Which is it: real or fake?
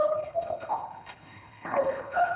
fake